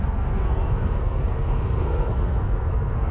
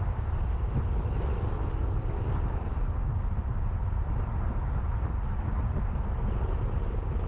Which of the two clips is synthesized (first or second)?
first